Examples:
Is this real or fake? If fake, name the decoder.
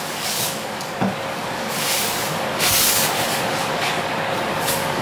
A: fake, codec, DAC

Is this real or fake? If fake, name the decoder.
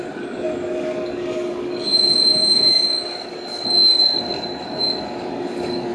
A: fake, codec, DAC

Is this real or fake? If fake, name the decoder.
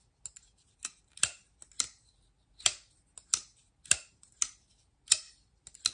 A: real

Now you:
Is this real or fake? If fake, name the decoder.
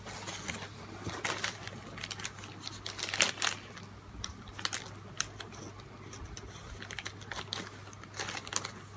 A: real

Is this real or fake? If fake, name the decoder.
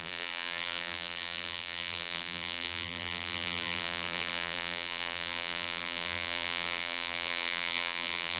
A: fake, vocoder, BigVGAN v2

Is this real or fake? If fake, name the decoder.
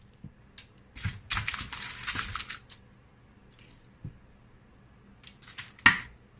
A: real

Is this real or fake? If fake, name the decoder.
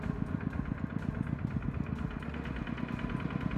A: real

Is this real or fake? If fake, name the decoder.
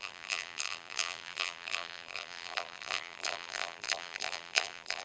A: fake, vocoder, BigVGAN v2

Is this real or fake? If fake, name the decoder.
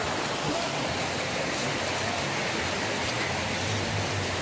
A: real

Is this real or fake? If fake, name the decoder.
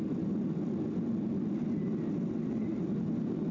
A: real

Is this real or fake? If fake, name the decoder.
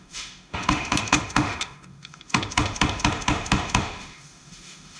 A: fake, autoencoder, DAC-VAE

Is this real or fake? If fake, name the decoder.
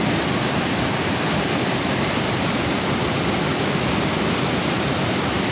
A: fake, vocoder, BigVGAN v2